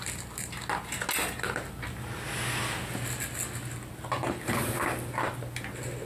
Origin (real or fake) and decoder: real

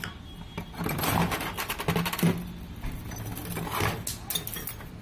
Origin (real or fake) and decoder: real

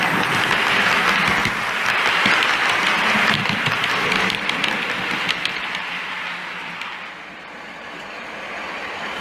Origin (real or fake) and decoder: real